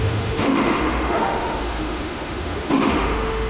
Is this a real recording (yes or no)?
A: no